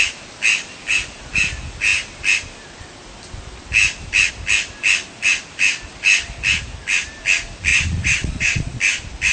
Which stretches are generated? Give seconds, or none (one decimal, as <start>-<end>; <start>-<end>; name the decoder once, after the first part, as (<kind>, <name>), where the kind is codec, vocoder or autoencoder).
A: 7.7-8.8 (vocoder, Vocos)